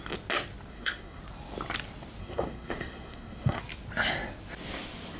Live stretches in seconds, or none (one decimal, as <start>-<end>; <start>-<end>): 0.0-0.7; 1.2-2.2; 3.6-5.2